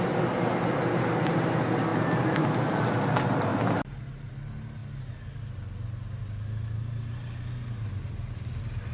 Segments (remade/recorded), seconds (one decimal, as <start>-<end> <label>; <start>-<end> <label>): 0.0-1.9 recorded; 1.9-2.5 remade; 2.5-3.5 recorded; 3.5-4.3 remade; 4.3-8.9 recorded